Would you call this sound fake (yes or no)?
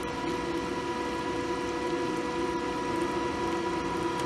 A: no